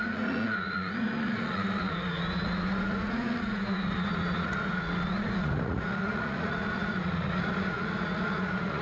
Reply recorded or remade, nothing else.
remade